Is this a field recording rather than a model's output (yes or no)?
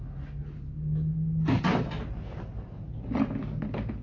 yes